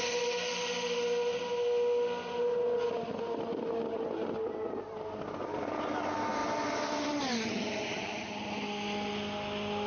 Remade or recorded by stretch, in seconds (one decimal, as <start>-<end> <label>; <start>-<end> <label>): 0.0-9.9 recorded